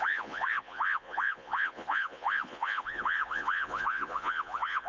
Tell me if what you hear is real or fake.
fake